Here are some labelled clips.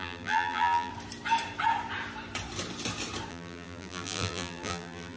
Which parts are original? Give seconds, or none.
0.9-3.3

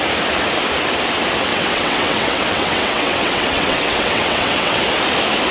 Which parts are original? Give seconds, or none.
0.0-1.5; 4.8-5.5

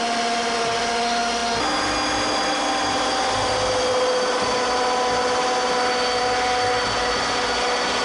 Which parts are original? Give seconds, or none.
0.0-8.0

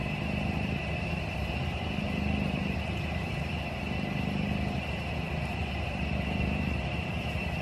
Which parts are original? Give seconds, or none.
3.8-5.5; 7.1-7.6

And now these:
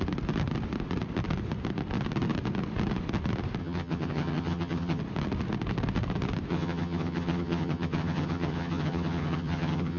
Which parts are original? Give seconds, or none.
0.0-3.6; 5.0-6.5

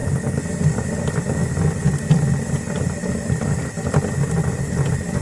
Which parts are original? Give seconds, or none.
0.0-5.2

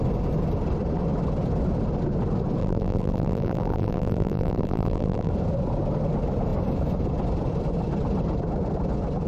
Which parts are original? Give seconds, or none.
0.0-2.6; 5.3-9.3

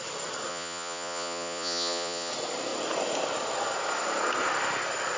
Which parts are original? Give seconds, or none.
0.0-0.5; 2.3-5.2